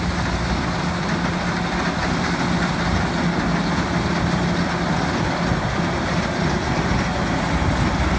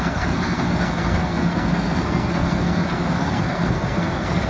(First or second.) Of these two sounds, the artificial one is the second